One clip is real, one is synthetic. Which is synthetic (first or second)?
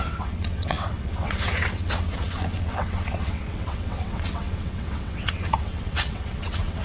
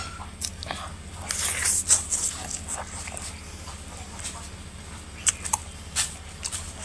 first